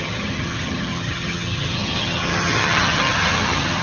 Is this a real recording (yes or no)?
no